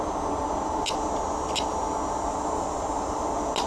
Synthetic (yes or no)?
no